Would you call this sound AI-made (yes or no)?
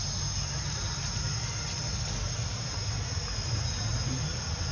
no